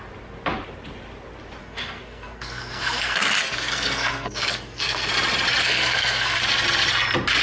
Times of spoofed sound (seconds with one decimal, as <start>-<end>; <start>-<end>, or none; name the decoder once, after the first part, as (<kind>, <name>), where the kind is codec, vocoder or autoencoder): 1.6-5.1 (codec, SNAC); 5.6-6.4